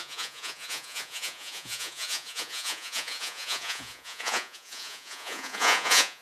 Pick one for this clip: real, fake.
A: fake